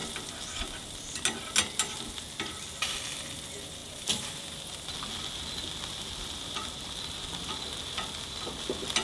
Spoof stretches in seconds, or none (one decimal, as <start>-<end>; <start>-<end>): 3.8-4.5